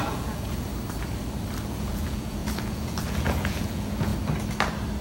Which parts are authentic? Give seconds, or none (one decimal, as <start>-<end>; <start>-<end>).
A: 0.7-1.7; 4.1-5.0